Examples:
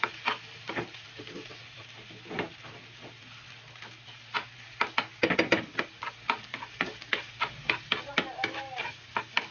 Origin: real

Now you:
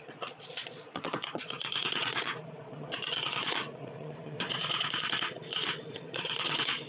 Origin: fake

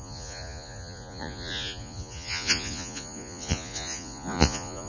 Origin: fake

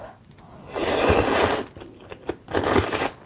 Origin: real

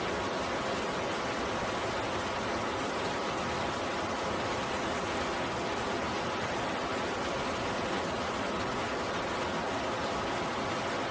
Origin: real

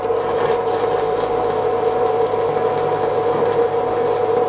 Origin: real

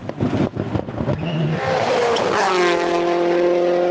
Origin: real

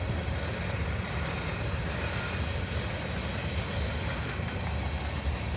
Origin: real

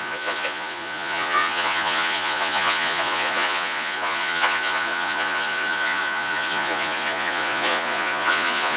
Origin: fake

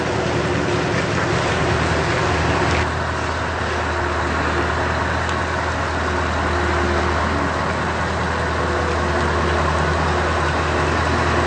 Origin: real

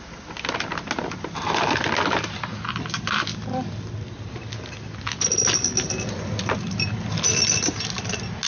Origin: real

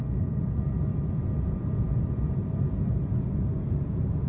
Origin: fake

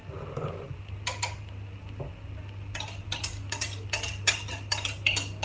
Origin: real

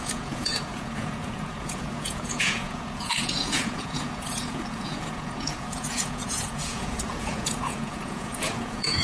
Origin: fake